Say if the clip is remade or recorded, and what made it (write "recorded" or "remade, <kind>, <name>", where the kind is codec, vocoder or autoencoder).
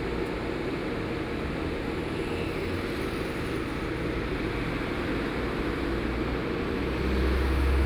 recorded